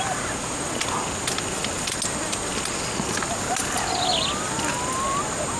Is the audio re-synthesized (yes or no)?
no